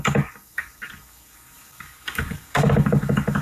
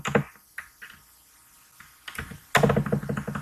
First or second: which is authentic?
second